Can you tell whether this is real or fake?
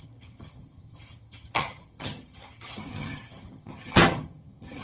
fake